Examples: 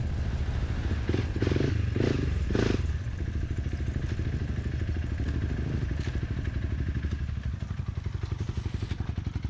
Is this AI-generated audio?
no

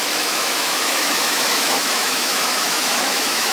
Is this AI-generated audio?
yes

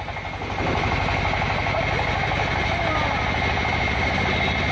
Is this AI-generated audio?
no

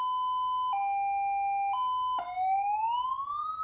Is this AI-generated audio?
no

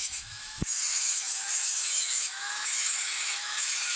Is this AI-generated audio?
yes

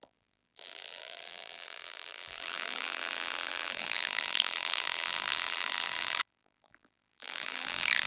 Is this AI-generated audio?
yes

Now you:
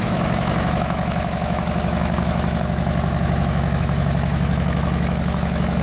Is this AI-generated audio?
yes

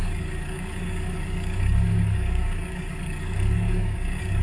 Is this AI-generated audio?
yes